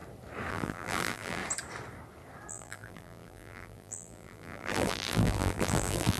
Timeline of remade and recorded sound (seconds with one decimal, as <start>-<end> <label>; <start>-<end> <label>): 0.0-0.5 recorded; 0.5-1.4 remade; 1.4-2.5 recorded; 2.5-6.2 remade